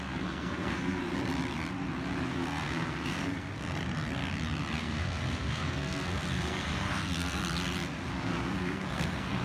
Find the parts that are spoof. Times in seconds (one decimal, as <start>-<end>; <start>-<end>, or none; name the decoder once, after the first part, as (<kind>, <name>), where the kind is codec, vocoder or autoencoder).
0.0-1.0 (codec, SNAC); 2.3-3.5; 4.8-7.4; 8.1-9.4